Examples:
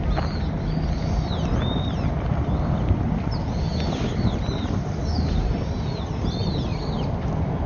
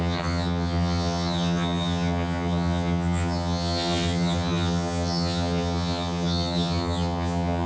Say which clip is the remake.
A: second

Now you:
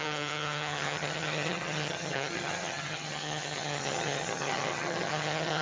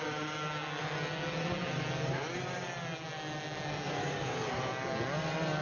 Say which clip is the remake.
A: first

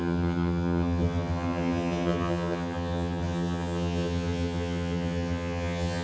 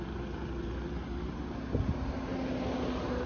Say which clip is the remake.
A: first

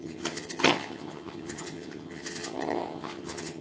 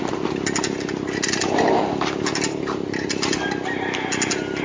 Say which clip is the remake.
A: first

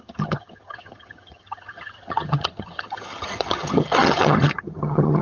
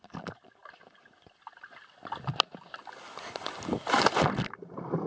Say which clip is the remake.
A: first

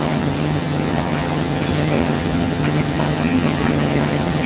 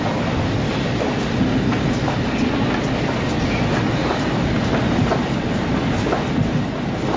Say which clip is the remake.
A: first